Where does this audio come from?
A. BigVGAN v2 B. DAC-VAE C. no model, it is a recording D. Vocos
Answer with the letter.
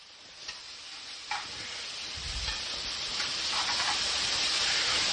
C